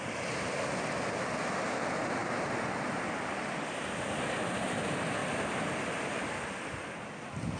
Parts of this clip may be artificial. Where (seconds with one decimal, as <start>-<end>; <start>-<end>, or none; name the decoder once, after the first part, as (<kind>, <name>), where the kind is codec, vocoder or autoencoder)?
none